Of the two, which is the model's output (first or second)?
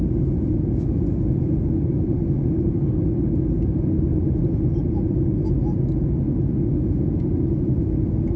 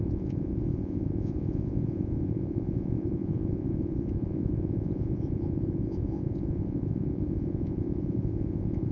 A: second